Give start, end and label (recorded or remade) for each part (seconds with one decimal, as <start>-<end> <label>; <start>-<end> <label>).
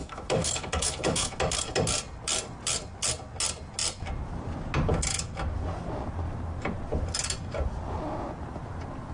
0.0-1.4 remade; 1.4-9.1 recorded